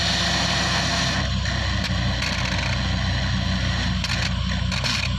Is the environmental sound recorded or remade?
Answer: recorded